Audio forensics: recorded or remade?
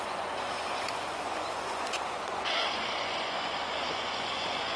remade